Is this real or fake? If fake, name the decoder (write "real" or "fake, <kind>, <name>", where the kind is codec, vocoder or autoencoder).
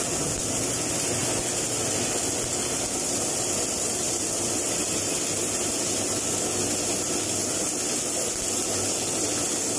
real